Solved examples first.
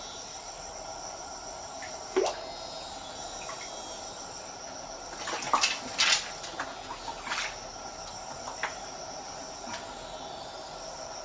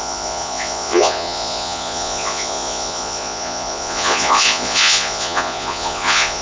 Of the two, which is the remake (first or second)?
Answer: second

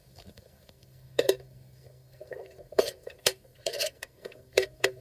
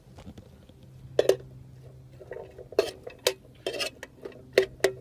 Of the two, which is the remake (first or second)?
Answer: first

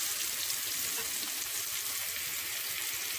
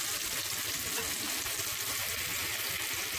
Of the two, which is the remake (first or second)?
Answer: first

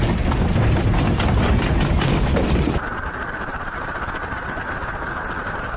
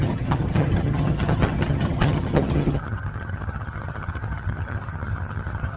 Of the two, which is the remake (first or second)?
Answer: second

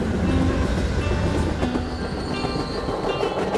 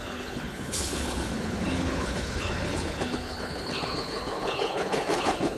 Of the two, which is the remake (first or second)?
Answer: second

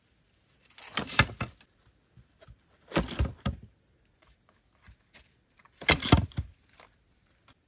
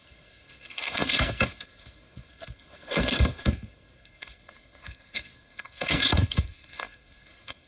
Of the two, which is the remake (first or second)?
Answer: second